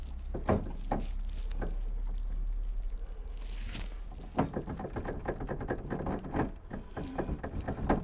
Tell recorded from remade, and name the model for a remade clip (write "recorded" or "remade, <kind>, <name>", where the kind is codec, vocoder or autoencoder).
recorded